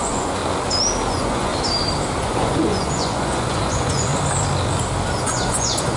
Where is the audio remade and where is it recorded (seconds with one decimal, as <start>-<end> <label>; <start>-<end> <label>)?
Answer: 0.0-0.4 remade; 0.4-1.1 recorded; 1.1-1.5 remade; 1.5-2.2 recorded; 2.2-4.1 remade; 4.1-5.2 recorded; 5.2-6.0 remade